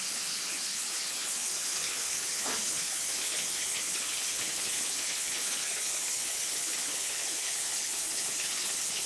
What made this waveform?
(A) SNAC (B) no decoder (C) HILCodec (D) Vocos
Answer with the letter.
C